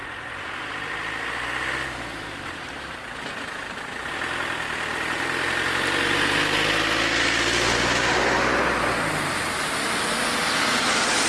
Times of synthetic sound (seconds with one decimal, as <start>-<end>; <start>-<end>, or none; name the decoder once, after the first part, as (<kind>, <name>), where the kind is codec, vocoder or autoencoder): 0.0-0.7 (vocoder, Vocos)